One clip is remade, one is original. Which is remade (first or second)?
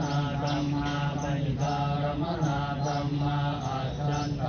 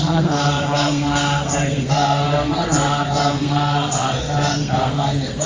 second